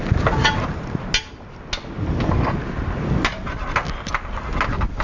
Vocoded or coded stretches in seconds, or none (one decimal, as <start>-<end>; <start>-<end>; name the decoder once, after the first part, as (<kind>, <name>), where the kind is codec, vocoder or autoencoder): none